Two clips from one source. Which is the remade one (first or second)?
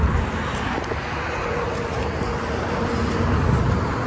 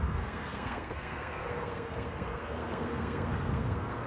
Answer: second